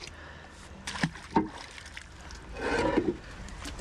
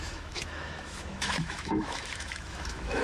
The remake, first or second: second